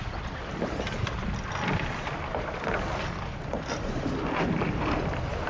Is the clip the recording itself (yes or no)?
yes